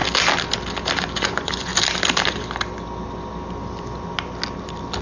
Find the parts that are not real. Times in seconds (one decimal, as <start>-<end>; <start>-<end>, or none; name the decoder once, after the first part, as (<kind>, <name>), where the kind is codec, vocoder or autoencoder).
1.0-1.7 (vocoder, Vocos)